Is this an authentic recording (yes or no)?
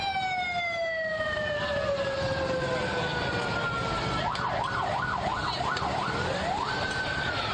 yes